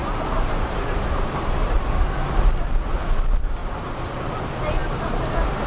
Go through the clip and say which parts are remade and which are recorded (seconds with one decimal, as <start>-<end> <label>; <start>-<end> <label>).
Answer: 0.0-2.1 remade; 2.1-3.6 recorded; 3.6-4.3 remade; 4.3-5.7 recorded